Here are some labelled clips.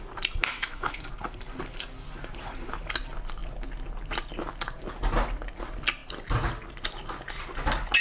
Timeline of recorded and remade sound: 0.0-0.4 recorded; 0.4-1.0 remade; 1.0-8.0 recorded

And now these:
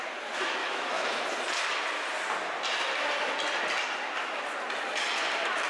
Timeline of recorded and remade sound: 0.0-0.6 recorded; 0.6-1.2 remade; 1.2-5.7 recorded

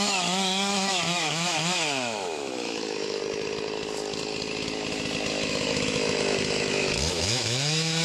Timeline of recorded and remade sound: 0.0-3.2 remade; 3.2-5.3 recorded; 5.3-8.0 remade